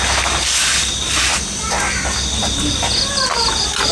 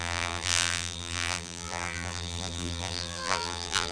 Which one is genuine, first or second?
first